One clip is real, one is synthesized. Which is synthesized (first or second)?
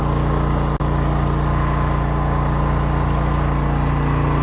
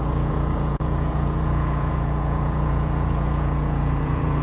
second